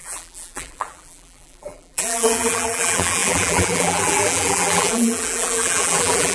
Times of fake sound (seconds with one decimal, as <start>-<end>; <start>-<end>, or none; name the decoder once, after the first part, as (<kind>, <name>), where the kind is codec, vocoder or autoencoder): 0.0-6.3 (vocoder, BigVGAN v2)